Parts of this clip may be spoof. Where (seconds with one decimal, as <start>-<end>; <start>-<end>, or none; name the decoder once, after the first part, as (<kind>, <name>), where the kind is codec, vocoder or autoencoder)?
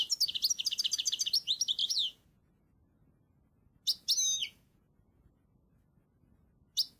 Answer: 1.8-2.5 (vocoder, Vocos); 4.4-5.3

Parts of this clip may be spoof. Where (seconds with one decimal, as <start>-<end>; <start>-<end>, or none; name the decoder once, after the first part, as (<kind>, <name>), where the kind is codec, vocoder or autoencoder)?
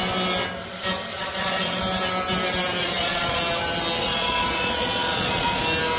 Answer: 1.1-1.8 (vocoder, Vocos); 2.8-3.4; 4.0-5.6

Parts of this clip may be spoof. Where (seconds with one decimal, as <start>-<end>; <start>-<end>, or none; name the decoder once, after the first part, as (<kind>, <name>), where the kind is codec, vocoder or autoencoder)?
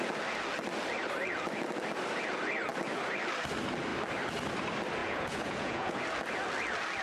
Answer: 5.0-6.0 (vocoder, Vocos)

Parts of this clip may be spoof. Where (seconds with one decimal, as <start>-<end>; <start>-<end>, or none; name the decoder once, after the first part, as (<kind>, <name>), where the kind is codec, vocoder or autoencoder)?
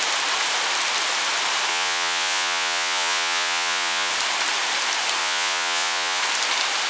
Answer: 1.7-4.1 (vocoder, Vocos); 5.2-6.2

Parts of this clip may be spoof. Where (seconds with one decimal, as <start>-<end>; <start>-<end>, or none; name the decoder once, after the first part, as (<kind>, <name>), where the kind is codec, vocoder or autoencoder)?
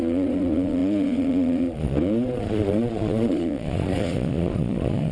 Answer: 0.0-5.1 (vocoder, Vocos)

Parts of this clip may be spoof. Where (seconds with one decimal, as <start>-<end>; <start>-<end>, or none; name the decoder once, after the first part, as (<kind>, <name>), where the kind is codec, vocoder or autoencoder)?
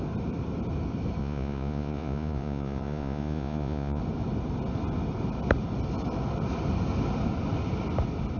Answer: 1.2-4.0 (vocoder, Vocos)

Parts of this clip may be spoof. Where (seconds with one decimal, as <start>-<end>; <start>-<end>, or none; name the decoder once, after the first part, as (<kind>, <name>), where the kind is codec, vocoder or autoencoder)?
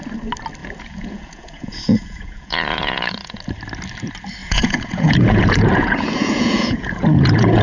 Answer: 0.6-3.4 (vocoder, Vocos); 4.4-7.6